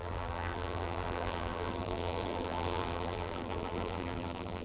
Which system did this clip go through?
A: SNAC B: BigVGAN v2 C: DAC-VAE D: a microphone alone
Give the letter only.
B